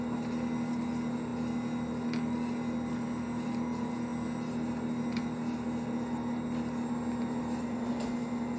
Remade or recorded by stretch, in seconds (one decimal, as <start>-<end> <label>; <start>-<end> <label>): 0.0-1.3 remade; 1.3-2.5 recorded; 2.5-4.1 remade; 4.1-7.4 recorded; 7.4-8.6 remade